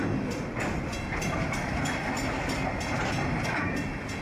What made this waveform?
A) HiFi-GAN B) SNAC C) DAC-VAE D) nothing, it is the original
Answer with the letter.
D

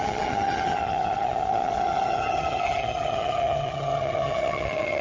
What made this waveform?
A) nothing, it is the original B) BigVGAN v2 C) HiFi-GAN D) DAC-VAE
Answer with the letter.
C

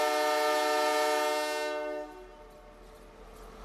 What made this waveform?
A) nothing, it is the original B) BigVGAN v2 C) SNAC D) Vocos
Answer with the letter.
A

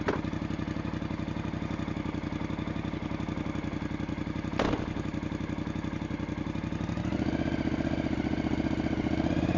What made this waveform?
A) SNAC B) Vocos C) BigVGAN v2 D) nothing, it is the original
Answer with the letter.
D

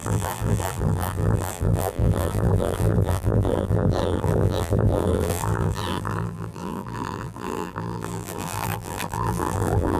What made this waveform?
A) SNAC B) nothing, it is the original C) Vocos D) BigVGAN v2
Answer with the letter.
D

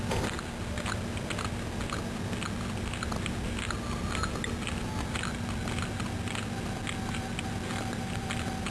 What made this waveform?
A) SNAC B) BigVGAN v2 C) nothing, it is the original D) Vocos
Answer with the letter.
C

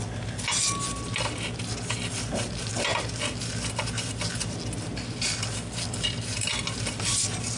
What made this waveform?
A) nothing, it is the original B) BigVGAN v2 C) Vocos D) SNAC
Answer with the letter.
A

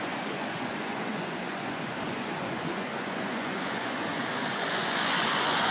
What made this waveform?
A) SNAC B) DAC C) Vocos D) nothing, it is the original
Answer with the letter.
C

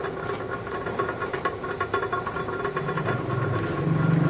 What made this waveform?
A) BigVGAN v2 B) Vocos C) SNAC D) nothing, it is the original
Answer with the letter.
A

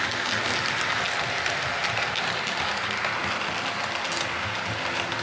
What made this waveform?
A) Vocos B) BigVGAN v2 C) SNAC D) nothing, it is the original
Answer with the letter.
D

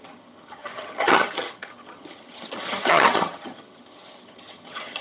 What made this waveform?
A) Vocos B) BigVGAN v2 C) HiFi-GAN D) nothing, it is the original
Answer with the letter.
C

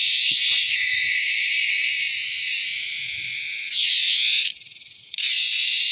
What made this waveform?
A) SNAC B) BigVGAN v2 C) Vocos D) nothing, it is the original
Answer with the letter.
C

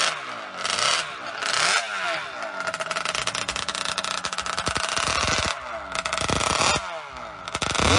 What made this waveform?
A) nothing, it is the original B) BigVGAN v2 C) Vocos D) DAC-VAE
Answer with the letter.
A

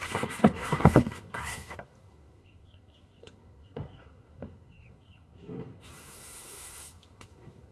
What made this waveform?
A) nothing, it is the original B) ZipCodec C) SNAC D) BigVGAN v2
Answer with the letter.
C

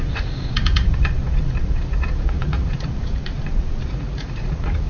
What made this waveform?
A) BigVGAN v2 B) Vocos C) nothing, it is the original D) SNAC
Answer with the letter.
B